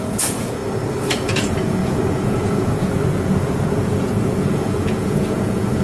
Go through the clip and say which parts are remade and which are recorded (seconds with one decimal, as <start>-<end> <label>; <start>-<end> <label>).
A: 0.0-0.6 remade; 0.6-1.1 recorded; 1.1-5.8 remade